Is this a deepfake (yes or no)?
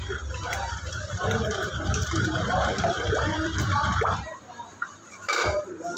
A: yes